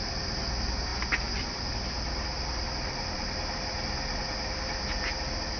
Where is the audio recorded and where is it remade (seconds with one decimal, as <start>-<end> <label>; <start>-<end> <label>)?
0.0-5.6 recorded